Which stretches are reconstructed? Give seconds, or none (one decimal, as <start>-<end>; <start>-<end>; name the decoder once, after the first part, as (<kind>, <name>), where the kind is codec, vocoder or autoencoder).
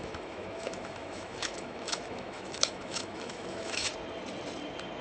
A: 0.0-3.9 (autoencoder, DAC-VAE)